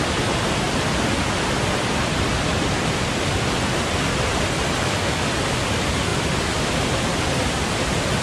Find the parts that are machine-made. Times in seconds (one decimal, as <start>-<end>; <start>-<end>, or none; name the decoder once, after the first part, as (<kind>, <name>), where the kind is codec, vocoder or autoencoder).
6.1-7.2 (vocoder, BigVGAN v2)